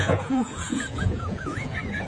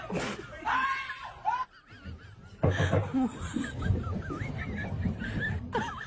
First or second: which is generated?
first